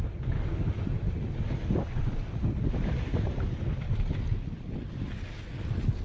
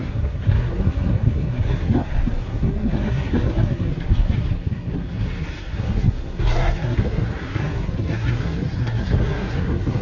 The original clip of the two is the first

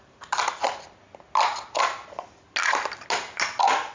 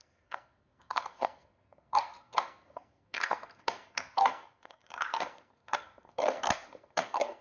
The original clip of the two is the first